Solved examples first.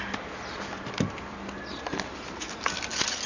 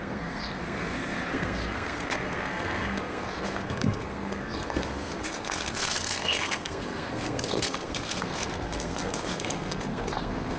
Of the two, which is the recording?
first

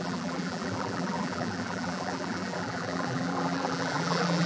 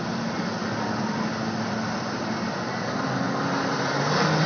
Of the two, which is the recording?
second